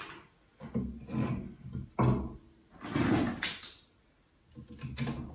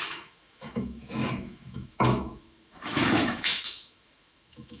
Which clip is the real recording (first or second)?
first